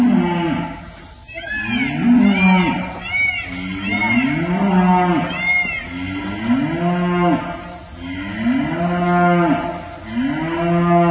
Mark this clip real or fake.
real